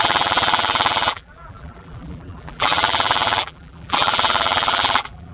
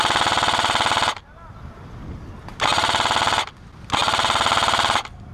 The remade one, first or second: first